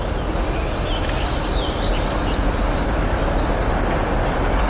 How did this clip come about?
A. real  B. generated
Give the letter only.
A